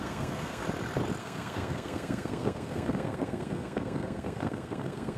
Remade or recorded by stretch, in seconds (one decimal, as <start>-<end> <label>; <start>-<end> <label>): 0.0-0.6 remade; 0.6-1.2 recorded; 1.2-5.2 remade